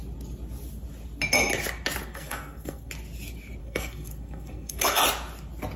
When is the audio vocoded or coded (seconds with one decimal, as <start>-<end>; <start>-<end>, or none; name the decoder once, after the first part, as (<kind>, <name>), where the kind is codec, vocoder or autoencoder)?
2.1-2.9 (codec, SNAC); 3.6-5.0